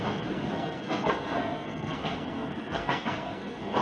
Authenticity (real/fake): fake